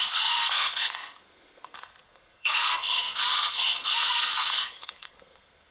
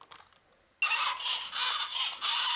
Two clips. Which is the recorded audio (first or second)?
second